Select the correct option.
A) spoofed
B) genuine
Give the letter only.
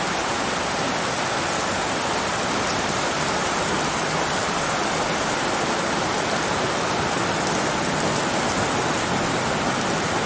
B